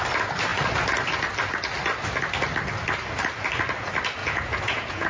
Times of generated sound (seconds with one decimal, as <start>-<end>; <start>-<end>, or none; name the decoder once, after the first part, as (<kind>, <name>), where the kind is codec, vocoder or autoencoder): 4.2-5.1 (vocoder, Vocos)